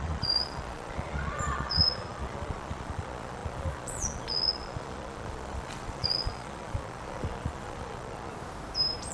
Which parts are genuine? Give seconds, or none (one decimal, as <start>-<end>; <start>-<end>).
8.3-9.1